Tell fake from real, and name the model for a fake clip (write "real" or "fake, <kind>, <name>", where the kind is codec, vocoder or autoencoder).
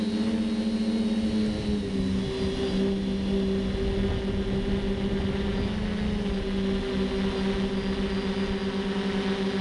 real